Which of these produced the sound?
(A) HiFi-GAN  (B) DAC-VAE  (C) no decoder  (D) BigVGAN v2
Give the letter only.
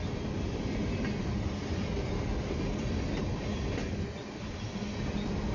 C